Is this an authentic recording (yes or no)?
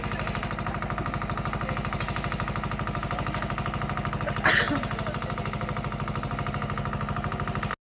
yes